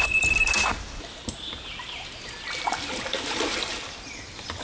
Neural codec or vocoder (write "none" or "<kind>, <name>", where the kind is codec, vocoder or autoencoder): none